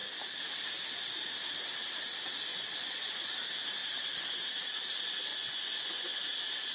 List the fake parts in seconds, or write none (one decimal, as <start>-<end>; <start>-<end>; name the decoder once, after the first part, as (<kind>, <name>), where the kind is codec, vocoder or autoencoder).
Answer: 2.5-3.3 (vocoder, Vocos); 5.3-6.2